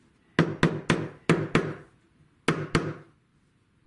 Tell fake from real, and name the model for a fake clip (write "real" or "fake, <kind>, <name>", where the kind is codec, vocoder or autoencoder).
real